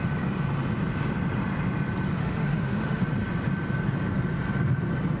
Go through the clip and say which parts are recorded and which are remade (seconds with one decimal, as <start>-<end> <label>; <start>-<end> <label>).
0.0-2.2 recorded; 2.2-3.0 remade; 3.0-5.2 recorded